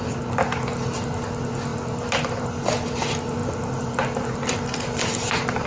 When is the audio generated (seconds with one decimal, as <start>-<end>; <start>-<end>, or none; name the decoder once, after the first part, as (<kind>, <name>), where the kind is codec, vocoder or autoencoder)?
3.4-5.7 (vocoder, BigVGAN v2)